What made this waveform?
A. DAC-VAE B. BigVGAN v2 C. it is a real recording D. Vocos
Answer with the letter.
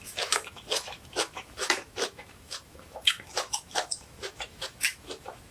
A